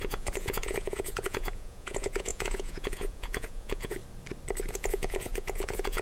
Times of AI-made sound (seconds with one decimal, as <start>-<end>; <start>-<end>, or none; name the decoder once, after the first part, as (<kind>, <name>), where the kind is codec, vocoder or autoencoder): 0.0-4.0 (vocoder, Vocos); 4.7-6.0